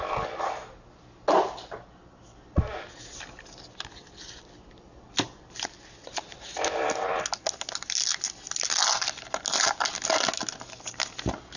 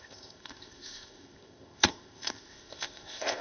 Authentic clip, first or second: first